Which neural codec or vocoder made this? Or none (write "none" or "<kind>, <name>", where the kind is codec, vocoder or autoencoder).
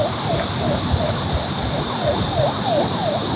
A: none